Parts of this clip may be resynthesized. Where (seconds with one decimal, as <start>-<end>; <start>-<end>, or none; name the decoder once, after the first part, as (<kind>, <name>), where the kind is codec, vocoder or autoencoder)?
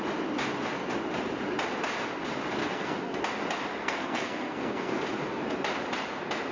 2.6-3.2 (codec, SNAC); 3.8-5.0